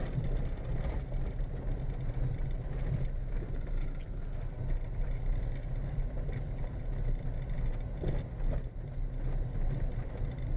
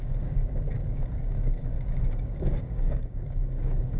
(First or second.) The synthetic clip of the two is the second